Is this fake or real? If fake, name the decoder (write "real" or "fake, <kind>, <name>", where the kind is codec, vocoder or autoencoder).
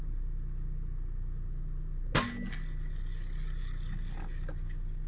real